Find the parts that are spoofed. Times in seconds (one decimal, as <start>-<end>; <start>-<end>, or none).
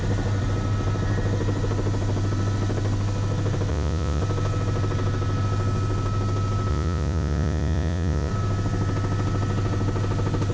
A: 3.7-4.2; 6.7-8.3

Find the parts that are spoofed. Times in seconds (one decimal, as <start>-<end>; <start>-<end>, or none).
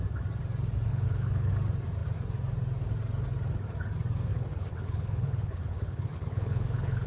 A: 0.9-1.5; 4.3-7.1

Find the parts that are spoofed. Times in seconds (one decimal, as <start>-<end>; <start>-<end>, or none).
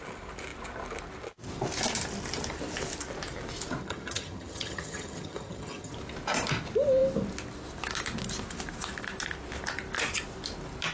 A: 3.8-5.9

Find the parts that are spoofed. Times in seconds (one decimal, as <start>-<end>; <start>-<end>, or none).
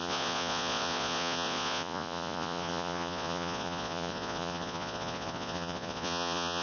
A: 0.0-6.6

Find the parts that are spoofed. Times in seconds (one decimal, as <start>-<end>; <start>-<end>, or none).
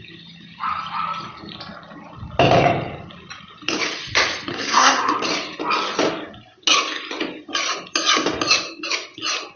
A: 4.5-5.2